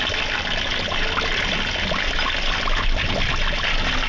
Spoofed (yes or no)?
no